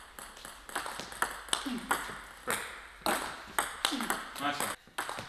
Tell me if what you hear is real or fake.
real